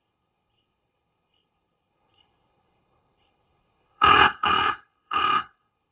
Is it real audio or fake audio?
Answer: fake